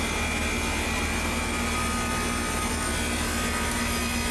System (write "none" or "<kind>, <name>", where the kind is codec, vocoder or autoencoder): none